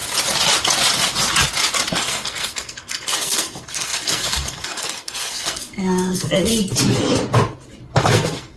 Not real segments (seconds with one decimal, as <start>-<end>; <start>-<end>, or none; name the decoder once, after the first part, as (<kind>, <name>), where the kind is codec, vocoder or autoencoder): 1.9-6.5 (codec, SNAC); 8.0-8.6